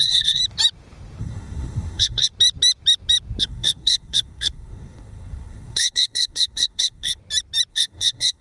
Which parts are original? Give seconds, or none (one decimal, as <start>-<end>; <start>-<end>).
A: 0.4-1.2; 2.3-3.4; 7.2-7.7